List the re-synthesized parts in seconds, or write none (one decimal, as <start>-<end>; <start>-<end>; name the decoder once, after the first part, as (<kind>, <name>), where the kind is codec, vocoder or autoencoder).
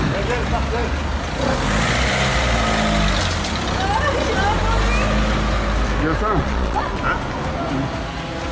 6.4-6.9 (vocoder, Vocos)